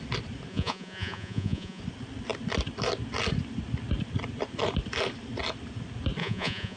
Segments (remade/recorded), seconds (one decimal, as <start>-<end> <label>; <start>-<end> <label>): 0.0-0.5 recorded; 0.5-1.8 remade; 1.8-6.2 recorded; 6.2-6.8 remade